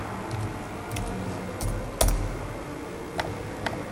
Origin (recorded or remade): recorded